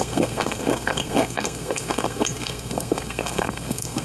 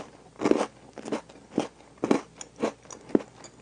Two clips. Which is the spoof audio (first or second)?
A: first